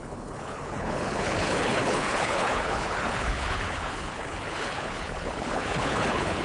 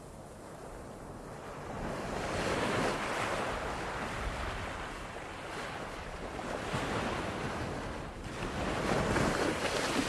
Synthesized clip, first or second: first